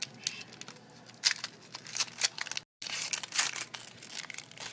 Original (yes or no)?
yes